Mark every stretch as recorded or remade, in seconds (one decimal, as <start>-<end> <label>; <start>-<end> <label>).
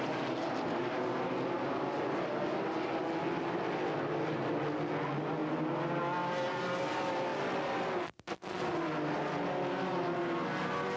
0.0-11.0 recorded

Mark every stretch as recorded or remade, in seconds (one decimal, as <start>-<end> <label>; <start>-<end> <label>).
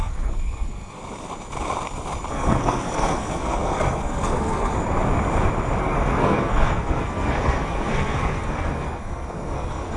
0.0-1.0 remade; 1.0-2.3 recorded; 2.3-4.7 remade; 4.7-5.8 recorded; 5.8-10.0 remade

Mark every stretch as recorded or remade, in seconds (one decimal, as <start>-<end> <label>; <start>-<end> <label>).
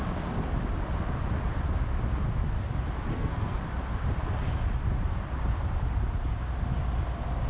0.0-3.1 recorded; 3.1-3.6 remade; 3.6-7.5 recorded